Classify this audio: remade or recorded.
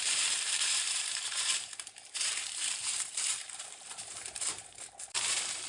remade